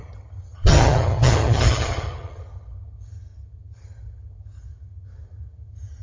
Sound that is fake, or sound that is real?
fake